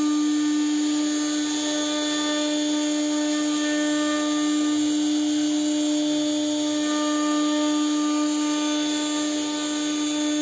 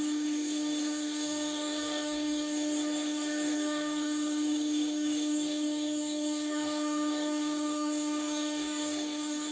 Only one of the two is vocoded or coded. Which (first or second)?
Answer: second